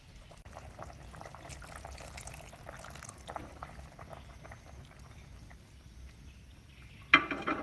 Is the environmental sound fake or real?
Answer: real